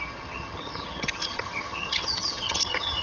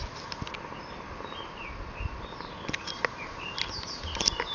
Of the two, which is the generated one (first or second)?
first